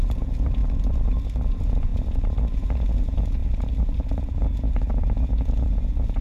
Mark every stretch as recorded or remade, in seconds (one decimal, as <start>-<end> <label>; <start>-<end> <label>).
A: 0.0-0.6 remade; 0.6-1.5 recorded; 1.5-1.9 remade; 1.9-2.5 recorded; 2.5-3.4 remade; 3.4-4.2 recorded; 4.2-6.2 remade